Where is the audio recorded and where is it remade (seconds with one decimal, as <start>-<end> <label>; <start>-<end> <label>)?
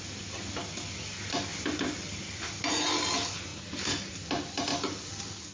0.0-5.5 recorded